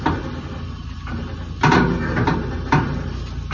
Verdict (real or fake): real